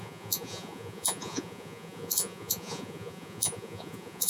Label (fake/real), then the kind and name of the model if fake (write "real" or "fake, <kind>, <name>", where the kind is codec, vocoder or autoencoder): fake, vocoder, Vocos